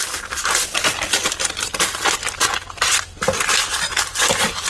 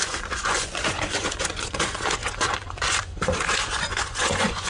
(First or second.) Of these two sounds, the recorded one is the first